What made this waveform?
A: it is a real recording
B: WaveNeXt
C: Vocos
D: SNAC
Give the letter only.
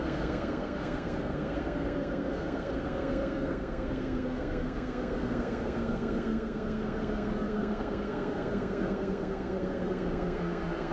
D